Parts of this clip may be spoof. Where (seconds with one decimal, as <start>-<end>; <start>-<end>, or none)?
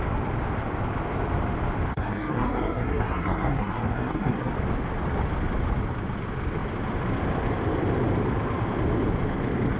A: 1.9-4.5